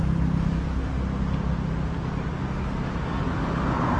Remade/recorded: recorded